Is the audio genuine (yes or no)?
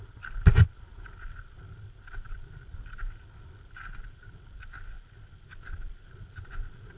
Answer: yes